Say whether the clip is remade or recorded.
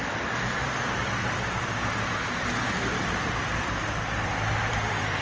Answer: remade